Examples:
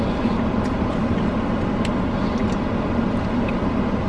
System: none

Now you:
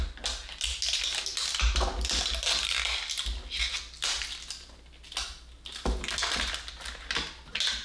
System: none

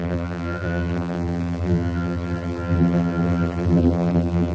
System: vocoder, BigVGAN v2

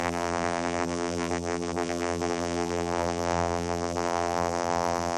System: vocoder, BigVGAN v2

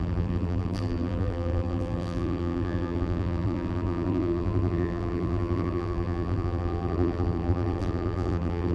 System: vocoder, BigVGAN v2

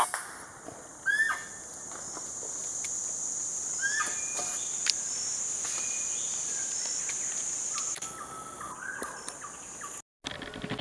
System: none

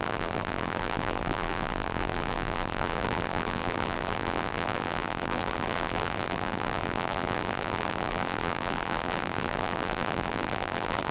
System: vocoder, BigVGAN v2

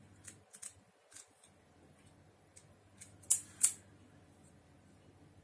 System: none